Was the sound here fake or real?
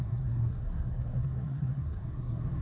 fake